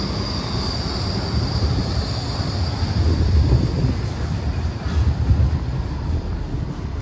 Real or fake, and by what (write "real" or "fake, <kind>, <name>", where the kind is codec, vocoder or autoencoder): real